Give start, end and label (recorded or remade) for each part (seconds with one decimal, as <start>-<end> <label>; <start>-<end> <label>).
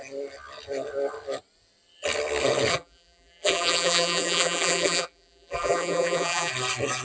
0.0-2.7 recorded; 2.7-6.5 remade; 6.5-7.0 recorded